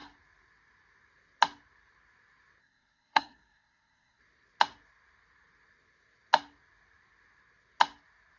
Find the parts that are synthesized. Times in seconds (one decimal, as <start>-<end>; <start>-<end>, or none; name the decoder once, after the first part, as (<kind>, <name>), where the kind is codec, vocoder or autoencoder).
2.6-4.2 (codec, SNAC)